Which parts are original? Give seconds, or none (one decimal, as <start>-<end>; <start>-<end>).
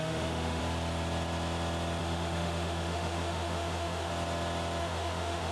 0.6-2.0; 4.1-4.8